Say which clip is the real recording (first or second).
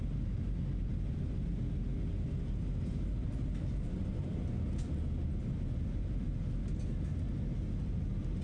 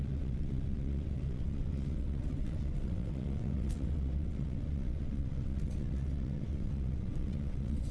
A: first